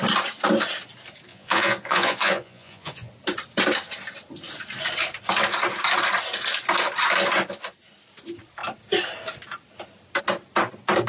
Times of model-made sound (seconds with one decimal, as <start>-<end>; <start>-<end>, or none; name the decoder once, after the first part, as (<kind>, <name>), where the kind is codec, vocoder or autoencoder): 1.3-3.1 (vocoder, Vocos)